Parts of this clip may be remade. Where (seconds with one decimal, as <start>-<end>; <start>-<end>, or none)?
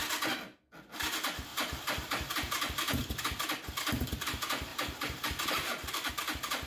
1.5-3.0; 4.7-6.1